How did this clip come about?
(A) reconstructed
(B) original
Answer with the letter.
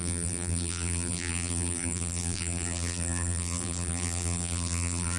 A